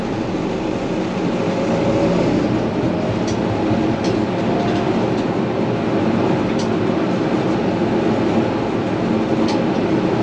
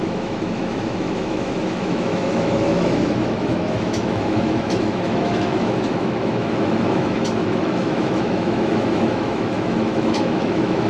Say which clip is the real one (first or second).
first